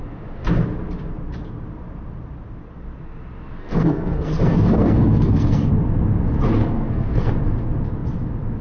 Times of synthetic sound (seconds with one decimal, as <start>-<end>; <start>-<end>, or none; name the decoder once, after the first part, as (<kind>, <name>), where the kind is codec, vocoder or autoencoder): 3.6-5.7 (codec, SNAC); 6.6-7.3

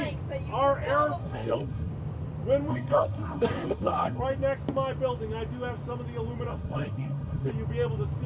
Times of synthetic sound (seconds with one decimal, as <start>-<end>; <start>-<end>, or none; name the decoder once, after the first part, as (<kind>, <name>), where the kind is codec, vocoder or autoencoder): 1.2-1.9 (codec, SNAC); 2.7-4.2; 6.5-7.5